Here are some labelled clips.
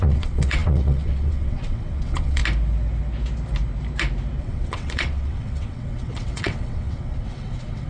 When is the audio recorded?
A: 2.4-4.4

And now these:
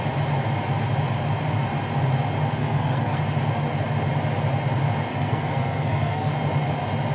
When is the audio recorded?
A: 0.0-2.6; 3.2-5.1; 6.3-7.1